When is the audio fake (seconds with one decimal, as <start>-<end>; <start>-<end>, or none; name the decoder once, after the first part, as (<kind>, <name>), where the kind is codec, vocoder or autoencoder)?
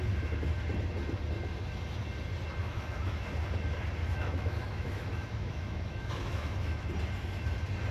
2.6-3.3 (autoencoder, DAC-VAE); 4.0-6.9